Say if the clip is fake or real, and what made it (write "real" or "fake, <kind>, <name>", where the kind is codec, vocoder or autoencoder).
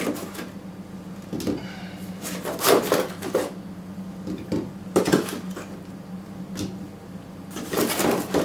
real